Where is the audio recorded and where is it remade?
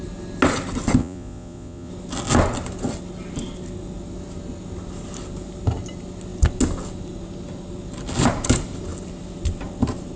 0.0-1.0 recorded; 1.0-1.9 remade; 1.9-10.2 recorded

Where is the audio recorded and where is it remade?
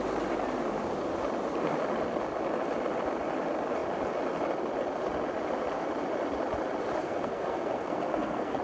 0.0-7.0 recorded; 7.0-8.6 remade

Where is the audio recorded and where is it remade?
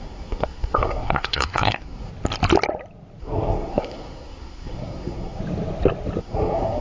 0.0-2.1 remade; 2.1-3.2 recorded; 3.2-5.4 remade; 5.4-6.2 recorded; 6.2-6.8 remade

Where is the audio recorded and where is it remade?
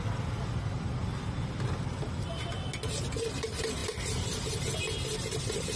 0.0-5.8 recorded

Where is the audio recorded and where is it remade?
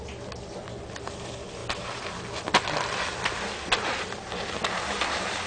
0.0-5.5 recorded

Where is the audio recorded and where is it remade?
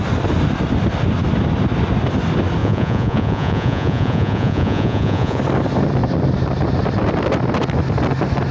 0.0-2.6 recorded; 2.6-5.4 remade; 5.4-8.5 recorded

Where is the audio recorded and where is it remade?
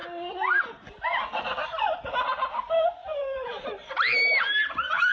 0.0-3.0 recorded; 3.0-3.9 remade; 3.9-5.1 recorded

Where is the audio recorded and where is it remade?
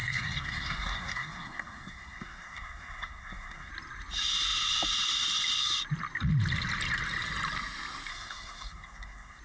0.0-3.7 remade; 3.7-8.1 recorded; 8.1-9.4 remade